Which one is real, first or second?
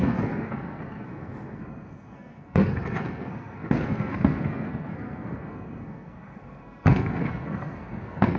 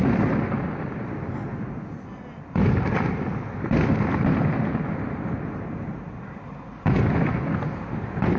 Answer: second